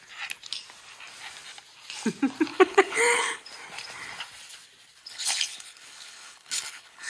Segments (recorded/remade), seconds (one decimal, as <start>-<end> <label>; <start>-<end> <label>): 0.0-2.5 recorded; 2.5-3.5 remade; 3.5-5.0 recorded; 5.0-7.1 remade